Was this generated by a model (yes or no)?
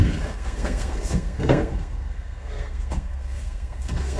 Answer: yes